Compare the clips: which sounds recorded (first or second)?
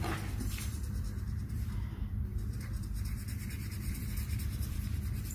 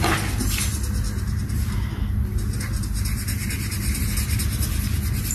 second